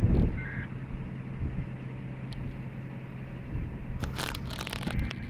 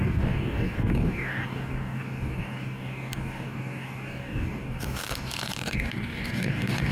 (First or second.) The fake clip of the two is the second